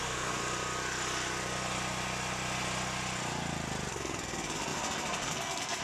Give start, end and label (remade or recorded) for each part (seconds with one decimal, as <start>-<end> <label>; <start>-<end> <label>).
0.0-0.4 remade; 0.4-3.9 recorded; 3.9-5.8 remade